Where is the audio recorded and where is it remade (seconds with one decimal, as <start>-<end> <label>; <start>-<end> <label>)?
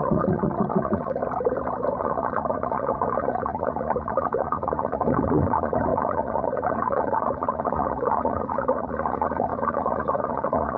0.0-1.2 remade; 1.2-2.0 recorded; 2.0-10.8 remade